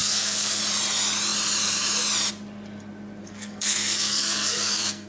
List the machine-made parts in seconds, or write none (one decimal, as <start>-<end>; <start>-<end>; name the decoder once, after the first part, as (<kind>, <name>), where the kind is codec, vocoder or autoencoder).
0.0-0.6 (codec, SNAC); 3.2-5.1